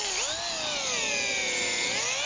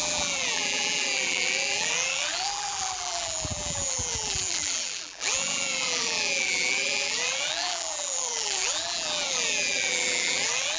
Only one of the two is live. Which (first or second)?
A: first